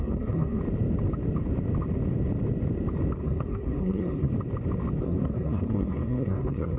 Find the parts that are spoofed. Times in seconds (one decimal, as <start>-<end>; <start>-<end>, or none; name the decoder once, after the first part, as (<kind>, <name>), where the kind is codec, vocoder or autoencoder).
0.0-0.6 (codec, SNAC); 3.2-4.3; 5.0-6.8